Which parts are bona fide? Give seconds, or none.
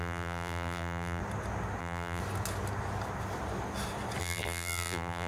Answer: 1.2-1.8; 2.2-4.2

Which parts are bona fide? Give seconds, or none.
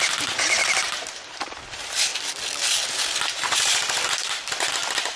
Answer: 2.1-3.1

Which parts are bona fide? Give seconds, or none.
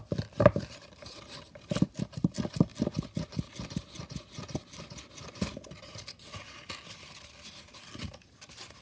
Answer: 0.0-8.8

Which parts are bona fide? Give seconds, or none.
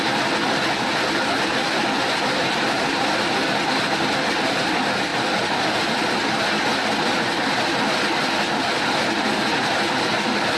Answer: 0.0-10.6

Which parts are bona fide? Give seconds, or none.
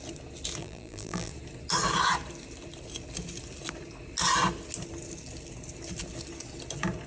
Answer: 0.0-0.6; 1.3-7.1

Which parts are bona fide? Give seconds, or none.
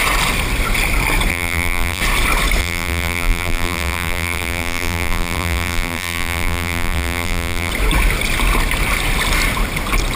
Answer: 0.0-1.3; 2.0-2.6; 7.7-10.2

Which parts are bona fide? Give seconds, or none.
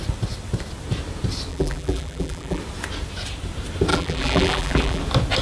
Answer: 0.0-1.5; 2.6-3.9; 5.0-5.4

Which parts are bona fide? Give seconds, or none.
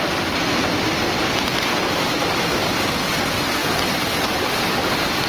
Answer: 0.0-3.6; 4.6-5.3